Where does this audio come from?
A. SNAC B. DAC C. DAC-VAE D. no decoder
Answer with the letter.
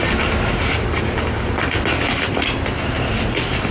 D